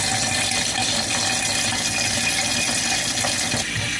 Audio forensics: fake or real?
real